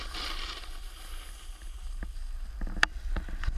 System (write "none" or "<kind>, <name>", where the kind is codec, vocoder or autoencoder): none